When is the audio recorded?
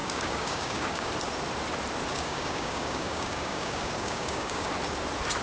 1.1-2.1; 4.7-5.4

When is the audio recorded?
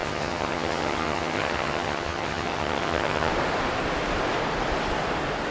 3.3-5.5